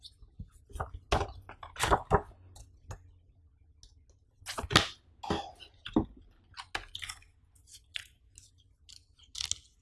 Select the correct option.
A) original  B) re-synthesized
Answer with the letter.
A